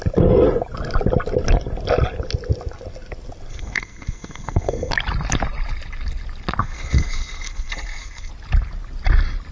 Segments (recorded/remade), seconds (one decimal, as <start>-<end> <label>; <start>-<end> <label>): 0.0-3.5 recorded; 3.5-4.9 remade; 4.9-6.6 recorded; 6.6-8.3 remade; 8.3-9.5 recorded